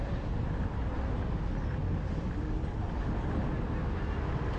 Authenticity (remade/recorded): recorded